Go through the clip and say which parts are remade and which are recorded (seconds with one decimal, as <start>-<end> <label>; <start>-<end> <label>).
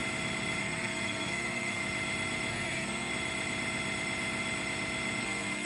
0.0-0.6 recorded; 0.6-1.8 remade; 1.8-2.5 recorded; 2.5-3.1 remade; 3.1-5.2 recorded; 5.2-5.7 remade